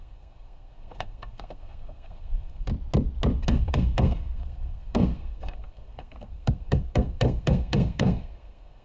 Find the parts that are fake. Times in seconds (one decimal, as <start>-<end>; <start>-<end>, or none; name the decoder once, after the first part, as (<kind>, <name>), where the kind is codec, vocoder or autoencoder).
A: 0.0-2.7 (codec, SNAC); 3.4-8.8